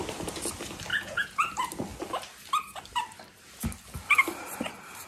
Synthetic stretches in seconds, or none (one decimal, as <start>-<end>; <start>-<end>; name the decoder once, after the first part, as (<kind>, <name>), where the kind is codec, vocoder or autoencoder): 0.9-1.5 (vocoder, Vocos)